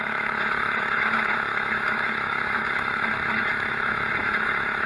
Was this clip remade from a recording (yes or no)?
yes